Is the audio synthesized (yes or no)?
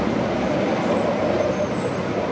no